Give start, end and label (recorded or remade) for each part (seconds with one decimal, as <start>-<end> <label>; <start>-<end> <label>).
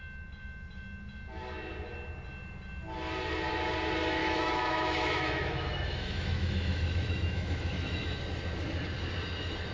0.0-4.2 recorded; 4.2-8.2 remade; 8.2-9.7 recorded